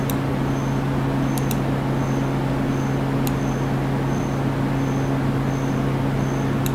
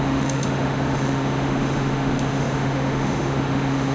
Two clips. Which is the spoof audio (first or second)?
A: second